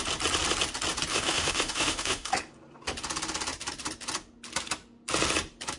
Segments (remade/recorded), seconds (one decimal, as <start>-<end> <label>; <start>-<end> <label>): 0.0-1.1 recorded; 1.1-2.3 remade; 2.3-5.8 recorded